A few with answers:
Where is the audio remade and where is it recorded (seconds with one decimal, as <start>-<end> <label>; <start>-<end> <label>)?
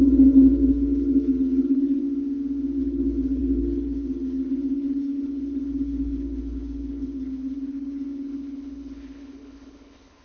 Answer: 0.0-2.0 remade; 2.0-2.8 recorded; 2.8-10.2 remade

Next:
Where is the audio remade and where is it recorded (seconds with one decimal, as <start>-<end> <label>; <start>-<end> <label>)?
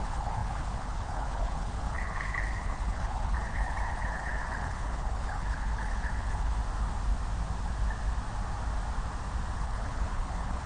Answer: 0.0-6.6 remade; 6.6-9.6 recorded; 9.6-10.7 remade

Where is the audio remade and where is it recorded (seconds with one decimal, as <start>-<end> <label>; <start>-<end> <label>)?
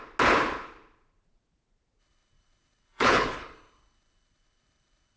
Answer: 0.0-2.0 recorded; 2.0-5.2 remade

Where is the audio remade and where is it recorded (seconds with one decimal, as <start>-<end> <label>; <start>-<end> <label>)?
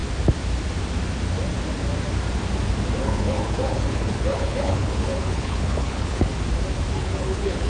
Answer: 0.0-3.0 recorded; 3.0-6.3 remade; 6.3-7.0 recorded; 7.0-7.7 remade